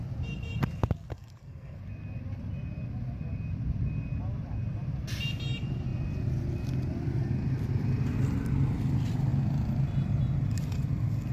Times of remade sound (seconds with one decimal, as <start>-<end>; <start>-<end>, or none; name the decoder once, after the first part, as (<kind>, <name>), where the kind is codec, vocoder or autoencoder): 1.1-1.8 (codec, SNAC)